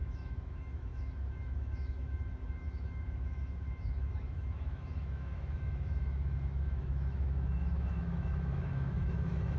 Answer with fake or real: fake